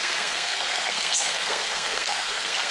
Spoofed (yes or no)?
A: yes